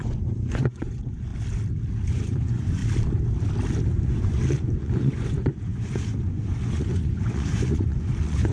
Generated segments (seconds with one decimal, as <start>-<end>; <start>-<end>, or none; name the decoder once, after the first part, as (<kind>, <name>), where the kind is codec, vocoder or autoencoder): 0.0-1.3 (vocoder, Vocos); 2.1-2.8; 3.9-8.5